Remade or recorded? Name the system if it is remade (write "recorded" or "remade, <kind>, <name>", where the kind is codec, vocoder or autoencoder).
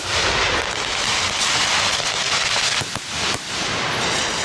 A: recorded